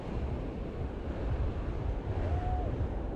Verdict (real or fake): real